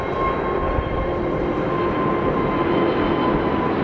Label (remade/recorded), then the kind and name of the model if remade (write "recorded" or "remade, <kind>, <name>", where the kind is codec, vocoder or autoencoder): recorded